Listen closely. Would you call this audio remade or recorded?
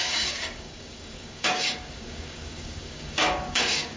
remade